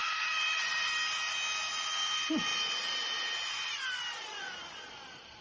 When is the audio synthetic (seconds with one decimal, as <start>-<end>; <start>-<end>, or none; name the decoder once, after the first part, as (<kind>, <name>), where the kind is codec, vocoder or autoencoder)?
0.0-0.9 (vocoder, Vocos); 4.3-4.9